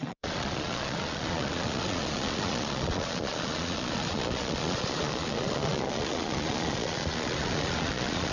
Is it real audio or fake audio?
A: fake